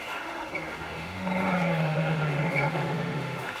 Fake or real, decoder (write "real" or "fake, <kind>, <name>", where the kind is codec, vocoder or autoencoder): fake, autoencoder, DAC-VAE